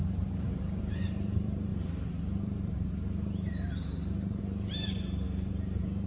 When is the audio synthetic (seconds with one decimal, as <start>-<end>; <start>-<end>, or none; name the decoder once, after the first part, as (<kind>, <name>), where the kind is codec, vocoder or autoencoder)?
0.0-6.1 (vocoder, BigVGAN v2)